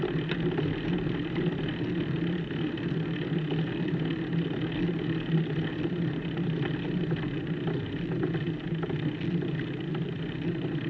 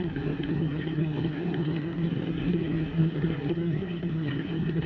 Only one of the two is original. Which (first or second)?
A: first